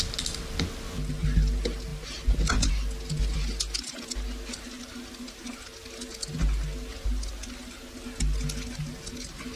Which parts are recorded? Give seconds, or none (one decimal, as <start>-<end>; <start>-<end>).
0.0-9.6